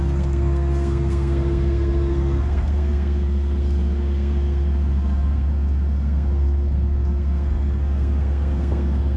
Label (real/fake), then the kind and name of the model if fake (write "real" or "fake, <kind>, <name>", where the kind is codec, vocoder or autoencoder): fake, codec, SNAC